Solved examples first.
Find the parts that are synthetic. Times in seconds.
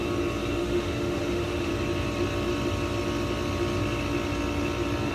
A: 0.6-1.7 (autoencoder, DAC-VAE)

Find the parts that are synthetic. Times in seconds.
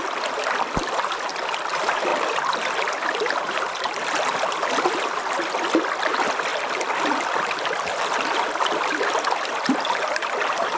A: none